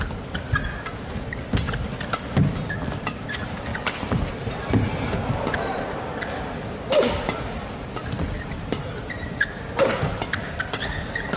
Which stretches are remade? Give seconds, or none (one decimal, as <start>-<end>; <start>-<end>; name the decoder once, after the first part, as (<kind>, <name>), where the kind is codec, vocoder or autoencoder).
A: none